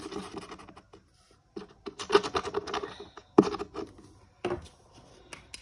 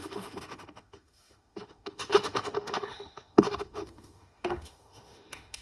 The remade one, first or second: second